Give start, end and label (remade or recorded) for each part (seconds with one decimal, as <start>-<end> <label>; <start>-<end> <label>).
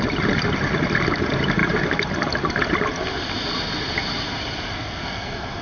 0.0-4.7 recorded; 4.7-5.6 remade